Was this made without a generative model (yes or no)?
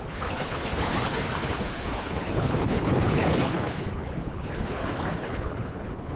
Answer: no